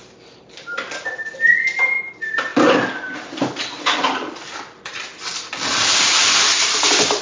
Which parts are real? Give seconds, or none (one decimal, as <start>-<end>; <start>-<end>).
0.0-7.2